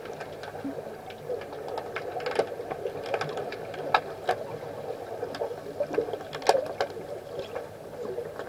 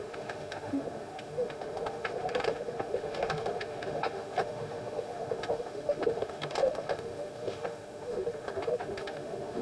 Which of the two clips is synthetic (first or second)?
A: second